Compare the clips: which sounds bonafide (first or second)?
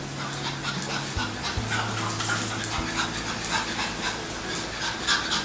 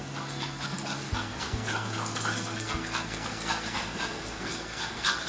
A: first